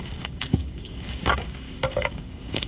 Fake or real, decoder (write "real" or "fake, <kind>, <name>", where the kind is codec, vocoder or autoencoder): fake, codec, DAC